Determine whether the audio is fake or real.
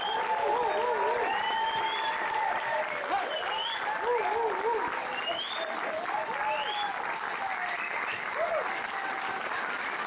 real